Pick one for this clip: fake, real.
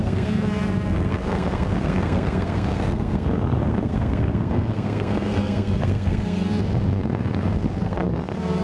fake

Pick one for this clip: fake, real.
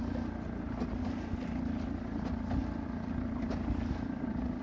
real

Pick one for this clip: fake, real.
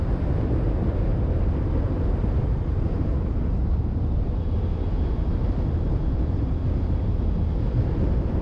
real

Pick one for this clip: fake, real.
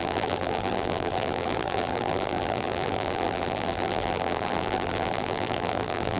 fake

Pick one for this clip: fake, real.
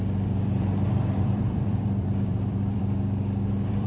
fake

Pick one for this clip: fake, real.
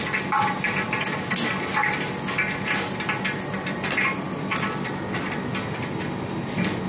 real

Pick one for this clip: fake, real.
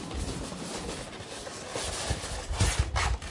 real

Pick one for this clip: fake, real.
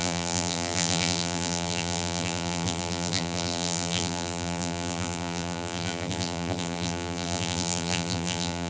fake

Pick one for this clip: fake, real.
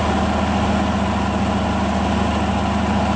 real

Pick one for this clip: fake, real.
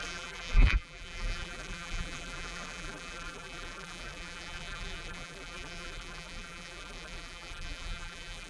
fake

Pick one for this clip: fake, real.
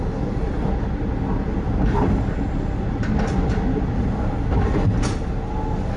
real